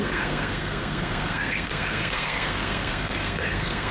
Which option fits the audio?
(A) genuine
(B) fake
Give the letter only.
B